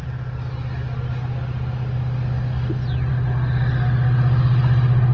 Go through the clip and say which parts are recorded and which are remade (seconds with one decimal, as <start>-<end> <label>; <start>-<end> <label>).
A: 0.0-5.1 recorded